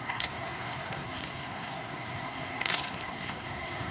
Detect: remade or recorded remade